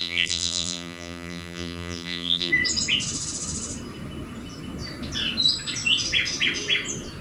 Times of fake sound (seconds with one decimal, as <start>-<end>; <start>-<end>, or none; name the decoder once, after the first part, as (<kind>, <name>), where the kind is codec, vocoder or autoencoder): 0.0-2.5 (vocoder, BigVGAN v2)